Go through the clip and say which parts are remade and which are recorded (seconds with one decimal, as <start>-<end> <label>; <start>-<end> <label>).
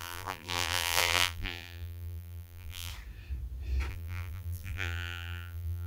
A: 0.0-2.9 remade; 2.9-3.9 recorded; 3.9-5.9 remade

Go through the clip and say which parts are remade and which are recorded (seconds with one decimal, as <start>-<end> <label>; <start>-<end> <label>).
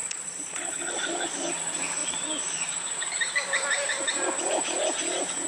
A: 0.0-1.5 remade; 1.5-5.5 recorded